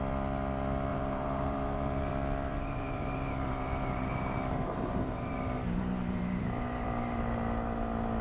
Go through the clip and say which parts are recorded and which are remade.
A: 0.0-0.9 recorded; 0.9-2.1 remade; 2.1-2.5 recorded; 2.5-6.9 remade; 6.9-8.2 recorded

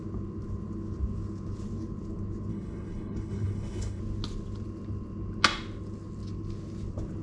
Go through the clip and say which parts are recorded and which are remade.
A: 0.0-2.5 recorded; 2.5-4.0 remade; 4.0-7.2 recorded

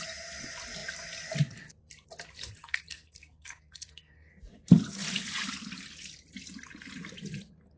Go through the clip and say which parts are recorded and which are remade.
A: 0.0-2.6 recorded; 2.6-4.3 remade; 4.3-7.8 recorded

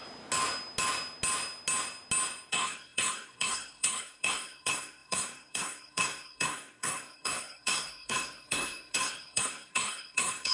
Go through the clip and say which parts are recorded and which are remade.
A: 0.0-2.5 recorded; 2.5-10.5 remade

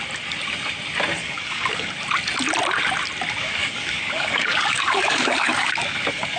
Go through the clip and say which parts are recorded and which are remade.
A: 0.0-1.2 recorded; 1.2-1.9 remade; 1.9-3.4 recorded; 3.4-6.4 remade

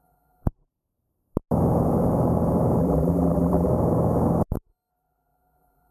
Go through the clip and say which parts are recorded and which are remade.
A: 0.0-0.7 remade; 0.7-2.8 recorded; 2.8-3.7 remade; 3.7-4.9 recorded; 4.9-5.9 remade

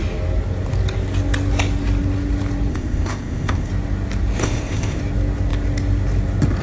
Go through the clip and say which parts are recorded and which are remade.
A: 0.0-2.7 recorded; 2.7-3.7 remade; 3.7-4.4 recorded; 4.4-5.0 remade; 5.0-6.6 recorded